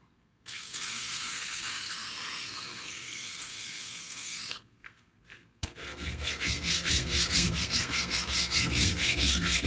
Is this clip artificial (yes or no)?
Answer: yes